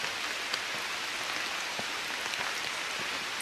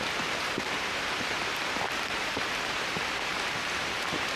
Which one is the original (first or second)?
first